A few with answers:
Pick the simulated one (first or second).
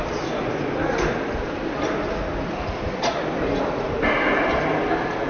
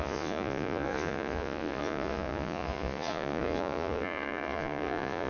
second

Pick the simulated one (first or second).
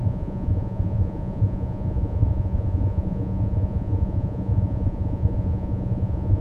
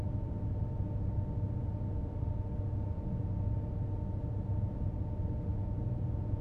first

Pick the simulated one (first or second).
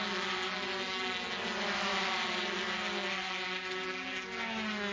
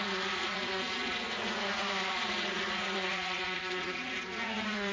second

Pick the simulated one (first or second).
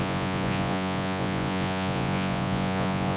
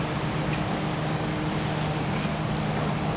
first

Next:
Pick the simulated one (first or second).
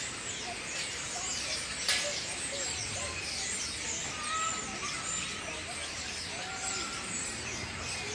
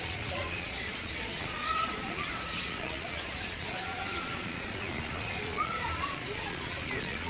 second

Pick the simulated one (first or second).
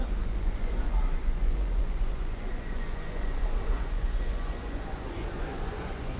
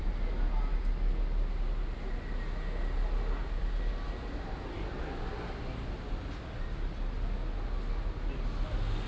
first